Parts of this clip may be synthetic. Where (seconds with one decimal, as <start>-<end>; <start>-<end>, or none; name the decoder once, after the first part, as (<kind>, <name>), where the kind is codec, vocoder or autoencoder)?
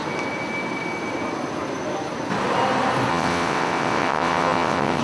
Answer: 3.1-5.0 (vocoder, WaveNeXt)